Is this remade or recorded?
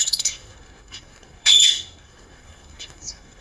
remade